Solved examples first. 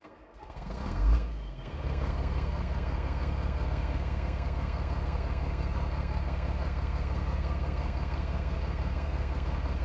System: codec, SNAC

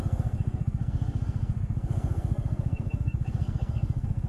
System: codec, SNAC